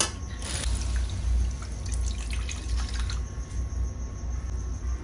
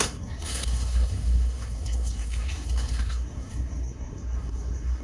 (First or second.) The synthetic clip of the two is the second